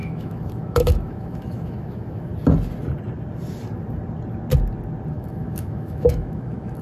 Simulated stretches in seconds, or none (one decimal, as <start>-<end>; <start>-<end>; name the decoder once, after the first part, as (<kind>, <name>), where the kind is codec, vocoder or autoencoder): 0.0-2.3 (autoencoder, DAC-VAE); 5.1-6.8

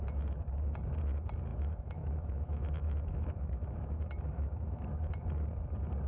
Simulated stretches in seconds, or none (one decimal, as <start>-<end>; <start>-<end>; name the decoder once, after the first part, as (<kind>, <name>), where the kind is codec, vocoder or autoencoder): 1.5-4.9 (autoencoder, DAC-VAE)

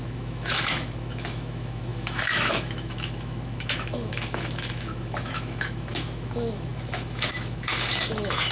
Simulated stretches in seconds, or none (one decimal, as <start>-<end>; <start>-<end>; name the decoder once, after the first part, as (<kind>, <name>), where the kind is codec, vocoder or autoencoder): 0.0-8.5 (autoencoder, DAC-VAE)

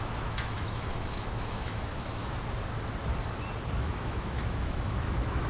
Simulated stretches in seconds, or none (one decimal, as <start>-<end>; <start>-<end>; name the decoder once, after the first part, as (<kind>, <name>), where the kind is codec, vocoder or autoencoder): 0.0-2.2 (autoencoder, DAC-VAE); 3.8-5.5

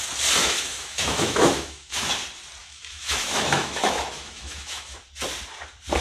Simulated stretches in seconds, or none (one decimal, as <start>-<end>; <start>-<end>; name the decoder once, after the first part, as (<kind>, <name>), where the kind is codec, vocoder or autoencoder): 0.4-2.1 (autoencoder, DAC-VAE); 2.6-5.0

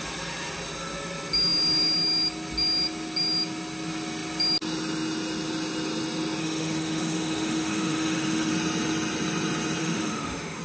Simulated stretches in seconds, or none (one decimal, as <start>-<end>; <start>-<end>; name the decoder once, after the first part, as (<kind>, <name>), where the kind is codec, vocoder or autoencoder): 6.4-8.5 (autoencoder, DAC-VAE); 9.8-10.6

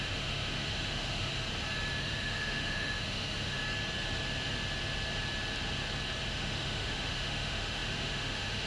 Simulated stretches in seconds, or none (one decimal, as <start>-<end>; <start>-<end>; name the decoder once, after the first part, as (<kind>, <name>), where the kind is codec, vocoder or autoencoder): 0.0-1.3 (autoencoder, DAC-VAE); 2.0-3.6; 6.3-8.7

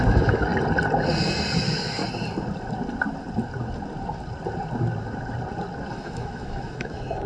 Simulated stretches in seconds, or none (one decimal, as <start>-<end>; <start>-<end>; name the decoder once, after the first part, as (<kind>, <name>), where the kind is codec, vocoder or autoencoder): 0.0-0.5 (autoencoder, DAC-VAE); 1.6-2.0; 5.9-7.3